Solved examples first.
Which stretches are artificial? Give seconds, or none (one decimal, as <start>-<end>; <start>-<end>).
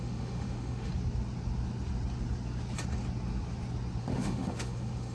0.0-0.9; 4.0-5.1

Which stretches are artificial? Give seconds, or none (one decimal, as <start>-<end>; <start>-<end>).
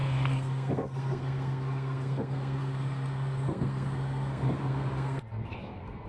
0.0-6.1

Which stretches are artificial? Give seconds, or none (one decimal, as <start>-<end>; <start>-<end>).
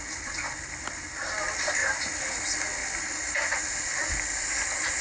1.8-2.4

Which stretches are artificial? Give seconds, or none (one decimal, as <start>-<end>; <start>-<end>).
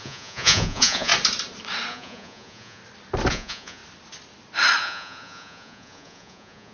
0.0-1.1; 1.9-2.8; 3.3-3.8; 4.8-6.7